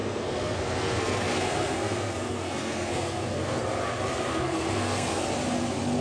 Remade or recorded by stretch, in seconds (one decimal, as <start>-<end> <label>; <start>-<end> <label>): 0.0-3.6 remade; 3.6-4.1 recorded; 4.1-5.2 remade; 5.2-6.0 recorded